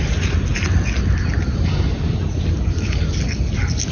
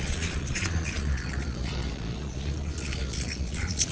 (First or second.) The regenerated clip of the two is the second